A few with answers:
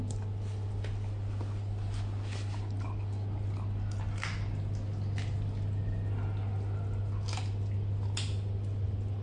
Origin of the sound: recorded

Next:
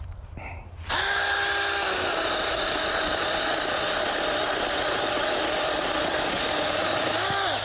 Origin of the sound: recorded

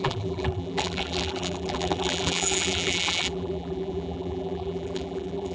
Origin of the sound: remade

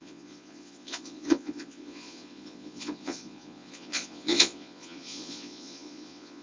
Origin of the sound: remade